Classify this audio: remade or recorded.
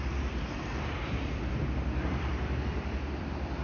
remade